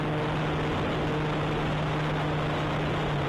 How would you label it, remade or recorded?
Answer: recorded